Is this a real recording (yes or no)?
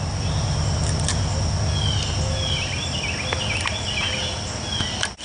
yes